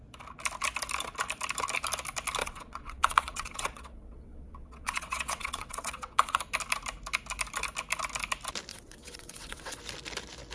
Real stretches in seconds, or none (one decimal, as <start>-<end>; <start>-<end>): 0.0-2.4; 6.4-8.7; 9.8-10.5